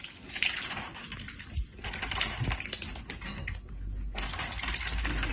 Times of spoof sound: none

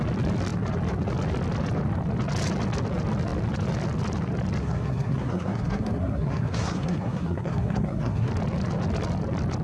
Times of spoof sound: 4.6-8.3